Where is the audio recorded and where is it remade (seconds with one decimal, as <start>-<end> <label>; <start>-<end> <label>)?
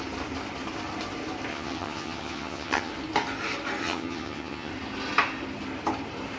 0.0-1.5 recorded; 1.5-2.9 remade; 2.9-3.8 recorded; 3.8-4.7 remade; 4.7-6.4 recorded